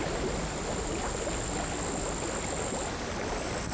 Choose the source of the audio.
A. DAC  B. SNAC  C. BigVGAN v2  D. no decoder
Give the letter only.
D